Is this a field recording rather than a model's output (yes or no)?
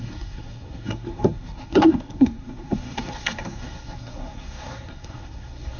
no